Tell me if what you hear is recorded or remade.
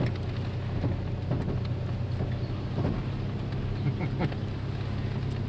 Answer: recorded